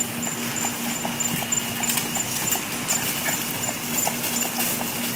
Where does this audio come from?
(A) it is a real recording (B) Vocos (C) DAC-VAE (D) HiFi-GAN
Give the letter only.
A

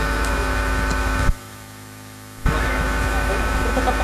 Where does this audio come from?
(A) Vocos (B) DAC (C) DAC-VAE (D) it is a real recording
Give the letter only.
C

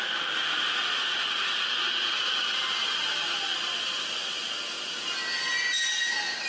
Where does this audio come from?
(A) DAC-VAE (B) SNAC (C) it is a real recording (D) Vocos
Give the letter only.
C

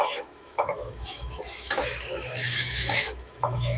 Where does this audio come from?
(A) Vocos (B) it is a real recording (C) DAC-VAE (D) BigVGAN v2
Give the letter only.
C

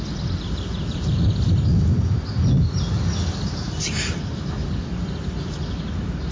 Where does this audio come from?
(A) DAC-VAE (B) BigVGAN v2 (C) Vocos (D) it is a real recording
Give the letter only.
D